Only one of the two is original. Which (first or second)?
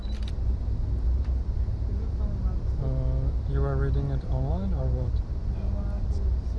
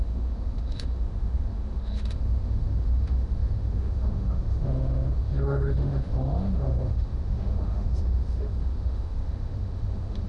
first